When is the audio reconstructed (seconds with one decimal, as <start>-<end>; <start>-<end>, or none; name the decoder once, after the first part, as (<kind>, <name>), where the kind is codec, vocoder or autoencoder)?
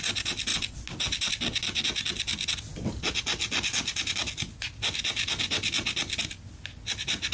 none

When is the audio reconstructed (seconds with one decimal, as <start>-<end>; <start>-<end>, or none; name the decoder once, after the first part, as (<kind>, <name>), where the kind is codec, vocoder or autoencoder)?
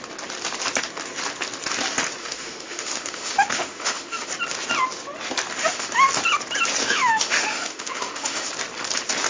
2.2-4.3 (autoencoder, DAC-VAE); 5.6-6.1; 6.8-8.5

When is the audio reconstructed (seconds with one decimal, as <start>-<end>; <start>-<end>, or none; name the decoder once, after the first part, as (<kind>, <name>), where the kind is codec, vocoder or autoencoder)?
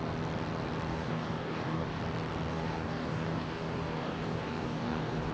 0.9-2.0 (codec, DAC); 2.5-5.3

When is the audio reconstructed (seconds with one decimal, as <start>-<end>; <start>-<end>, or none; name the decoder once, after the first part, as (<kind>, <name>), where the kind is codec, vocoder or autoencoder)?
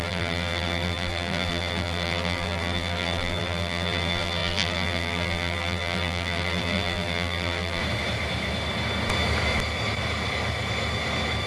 0.0-7.8 (vocoder, BigVGAN v2)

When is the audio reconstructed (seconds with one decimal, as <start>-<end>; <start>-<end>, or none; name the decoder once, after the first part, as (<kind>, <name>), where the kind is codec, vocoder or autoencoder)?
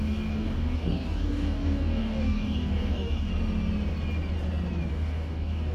0.0-3.3 (codec, DAC); 4.9-5.7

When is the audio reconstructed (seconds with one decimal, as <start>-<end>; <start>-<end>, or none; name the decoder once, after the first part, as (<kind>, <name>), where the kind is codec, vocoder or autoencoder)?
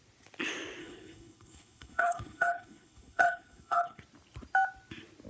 0.8-4.0 (codec, HILCodec)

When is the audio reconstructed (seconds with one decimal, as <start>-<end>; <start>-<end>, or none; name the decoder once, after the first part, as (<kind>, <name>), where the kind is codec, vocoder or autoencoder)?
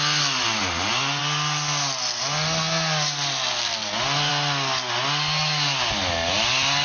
none